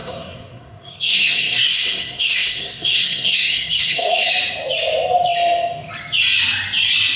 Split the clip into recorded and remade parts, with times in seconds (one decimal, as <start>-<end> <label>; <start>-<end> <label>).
0.0-4.3 remade; 4.3-7.2 recorded